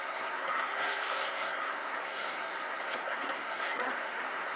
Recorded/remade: remade